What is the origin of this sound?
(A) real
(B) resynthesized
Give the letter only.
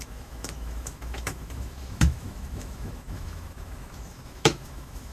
B